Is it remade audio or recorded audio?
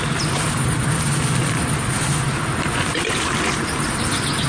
recorded